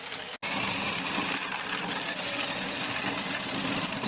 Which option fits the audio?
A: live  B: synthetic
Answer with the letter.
A